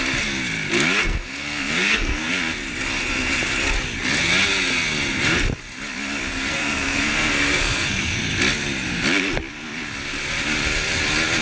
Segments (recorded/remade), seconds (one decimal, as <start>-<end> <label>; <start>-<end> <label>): 0.0-1.0 recorded; 1.0-2.3 remade; 2.3-6.3 recorded; 6.3-8.2 remade; 8.2-11.4 recorded